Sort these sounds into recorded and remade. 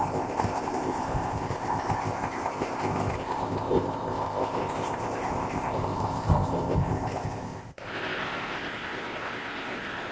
remade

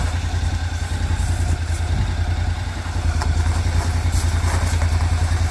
recorded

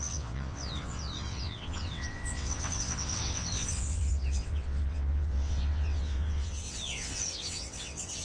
remade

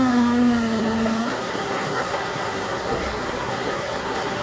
remade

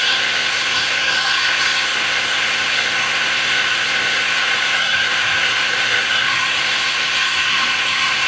remade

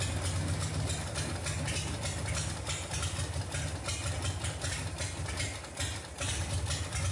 recorded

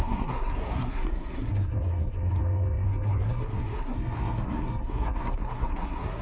remade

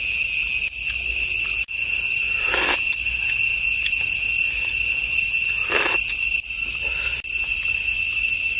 recorded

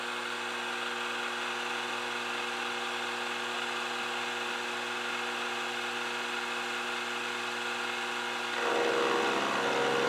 recorded